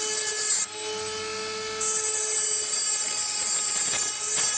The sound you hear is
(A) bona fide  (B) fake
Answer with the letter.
A